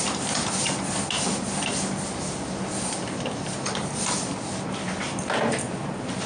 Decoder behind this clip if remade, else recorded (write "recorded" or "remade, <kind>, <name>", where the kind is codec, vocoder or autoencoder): recorded